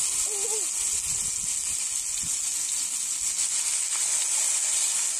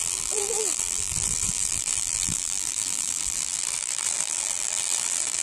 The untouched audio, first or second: first